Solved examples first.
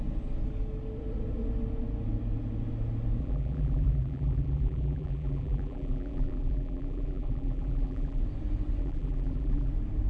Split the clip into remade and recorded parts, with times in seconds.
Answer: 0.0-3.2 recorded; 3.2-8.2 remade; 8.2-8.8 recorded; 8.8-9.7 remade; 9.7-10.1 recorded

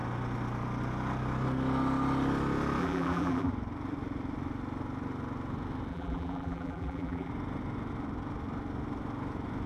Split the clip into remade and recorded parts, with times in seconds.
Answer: 0.0-2.8 recorded; 2.8-3.5 remade; 3.5-5.9 recorded; 5.9-7.3 remade; 7.3-9.7 recorded

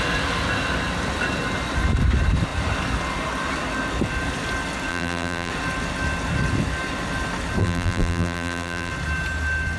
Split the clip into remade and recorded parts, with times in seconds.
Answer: 0.0-4.9 recorded; 4.9-5.5 remade; 5.5-7.6 recorded; 7.6-8.9 remade; 8.9-9.8 recorded

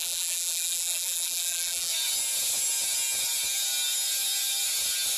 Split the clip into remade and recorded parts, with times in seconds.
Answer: 0.0-1.9 remade; 1.9-5.2 recorded

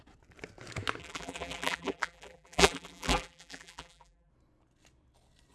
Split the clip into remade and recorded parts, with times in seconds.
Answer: 0.0-1.0 recorded; 1.0-4.3 remade; 4.3-5.5 recorded

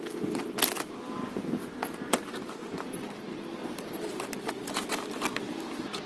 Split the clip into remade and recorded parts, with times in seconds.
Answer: 0.0-1.4 recorded; 1.4-2.7 remade; 2.7-3.6 recorded; 3.6-4.9 remade; 4.9-6.1 recorded